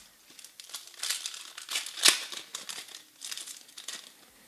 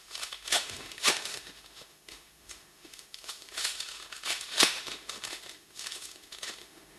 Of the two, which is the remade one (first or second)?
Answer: second